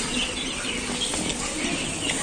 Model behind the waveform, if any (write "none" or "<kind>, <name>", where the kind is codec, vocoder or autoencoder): none